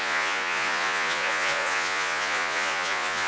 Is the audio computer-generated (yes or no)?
yes